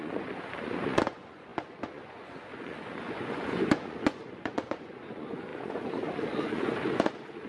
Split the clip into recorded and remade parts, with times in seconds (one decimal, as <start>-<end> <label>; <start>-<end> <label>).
0.0-7.5 remade